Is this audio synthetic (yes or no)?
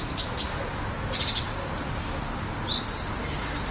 no